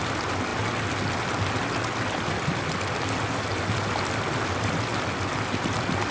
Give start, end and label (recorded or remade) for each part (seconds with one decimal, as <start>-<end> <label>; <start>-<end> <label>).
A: 0.0-6.1 recorded